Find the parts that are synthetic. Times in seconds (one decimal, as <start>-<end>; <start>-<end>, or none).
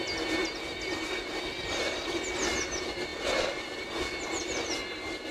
none